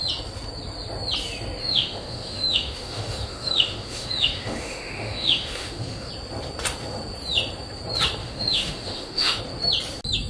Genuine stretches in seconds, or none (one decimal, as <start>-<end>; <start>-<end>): 0.0-1.6; 6.1-8.2; 9.4-10.3